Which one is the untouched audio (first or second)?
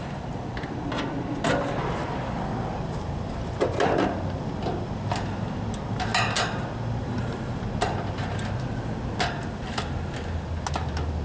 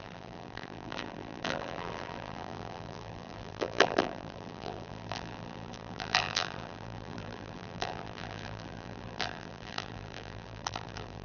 first